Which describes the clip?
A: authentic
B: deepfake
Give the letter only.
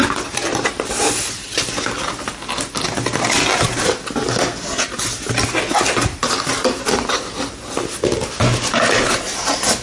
A